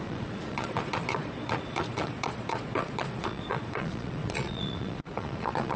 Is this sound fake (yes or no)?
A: yes